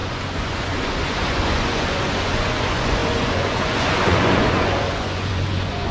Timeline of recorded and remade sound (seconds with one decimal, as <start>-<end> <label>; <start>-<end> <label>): 0.0-5.9 remade